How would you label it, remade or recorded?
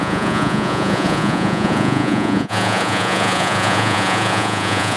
remade